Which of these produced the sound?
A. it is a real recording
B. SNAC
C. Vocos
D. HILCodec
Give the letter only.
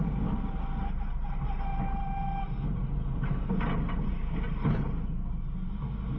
A